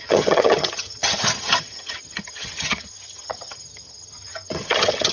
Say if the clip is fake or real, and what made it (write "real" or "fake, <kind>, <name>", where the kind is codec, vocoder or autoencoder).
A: fake, vocoder, HiFi-GAN